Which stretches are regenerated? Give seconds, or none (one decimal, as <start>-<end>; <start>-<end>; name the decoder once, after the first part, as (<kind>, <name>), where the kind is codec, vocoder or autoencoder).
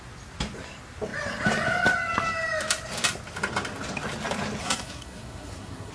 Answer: 4.6-5.9 (codec, SNAC)